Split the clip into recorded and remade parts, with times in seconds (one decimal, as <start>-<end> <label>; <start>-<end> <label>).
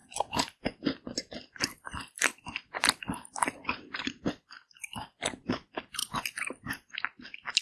0.0-1.3 recorded; 1.3-6.0 remade; 6.0-7.6 recorded